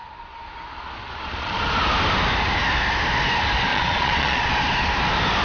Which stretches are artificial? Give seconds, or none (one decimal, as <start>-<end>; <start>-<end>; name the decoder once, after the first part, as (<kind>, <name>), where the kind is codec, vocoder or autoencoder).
0.0-1.6 (vocoder, Vocos); 3.7-4.5